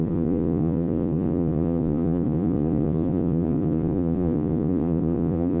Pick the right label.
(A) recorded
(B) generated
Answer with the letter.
B